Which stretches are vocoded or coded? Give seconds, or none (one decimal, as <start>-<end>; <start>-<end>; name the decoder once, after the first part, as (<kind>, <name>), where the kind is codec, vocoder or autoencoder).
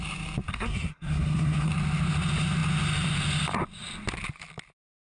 0.5-1.7 (codec, SNAC)